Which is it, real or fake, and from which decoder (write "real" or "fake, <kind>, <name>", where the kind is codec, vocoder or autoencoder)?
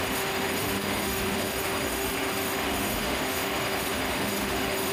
fake, autoencoder, DAC-VAE